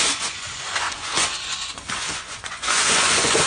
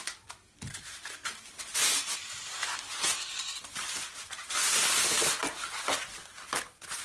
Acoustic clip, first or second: second